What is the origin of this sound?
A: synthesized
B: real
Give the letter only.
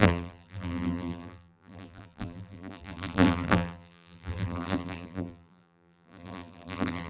A